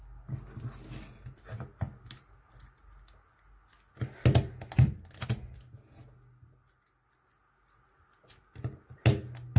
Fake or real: real